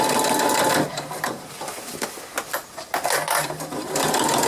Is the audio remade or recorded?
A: recorded